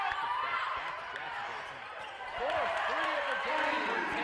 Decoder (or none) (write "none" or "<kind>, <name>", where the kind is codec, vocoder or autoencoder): vocoder, BigVGAN v2